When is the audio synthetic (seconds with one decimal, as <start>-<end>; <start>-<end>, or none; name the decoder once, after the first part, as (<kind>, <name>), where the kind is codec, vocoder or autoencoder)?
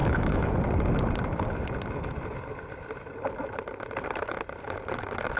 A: 0.0-0.5 (autoencoder, DAC-VAE)